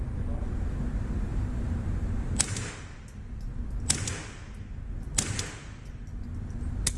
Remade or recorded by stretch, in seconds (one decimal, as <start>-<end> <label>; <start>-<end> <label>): 0.0-1.3 recorded; 1.3-2.7 remade; 2.7-7.0 recorded